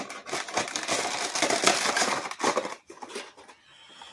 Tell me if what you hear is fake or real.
real